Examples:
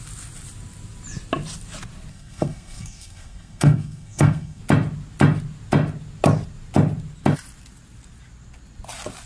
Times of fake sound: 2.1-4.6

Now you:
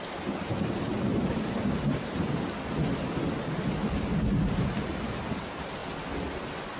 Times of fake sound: none

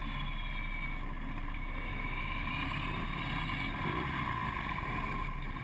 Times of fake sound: 1.9-2.5

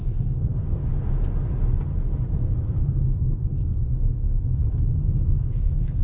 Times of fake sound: 0.0-0.8; 2.8-6.0

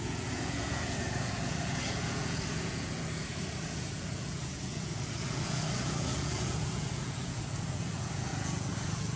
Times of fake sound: 0.0-9.2

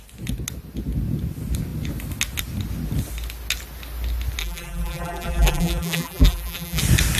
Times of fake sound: 4.4-6.8

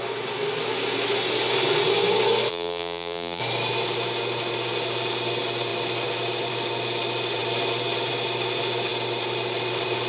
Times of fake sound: 2.5-3.4

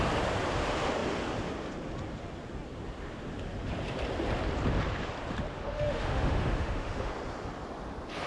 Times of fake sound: 5.5-7.1